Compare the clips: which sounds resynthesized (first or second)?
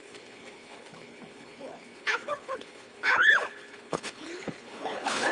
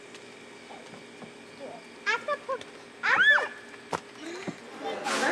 first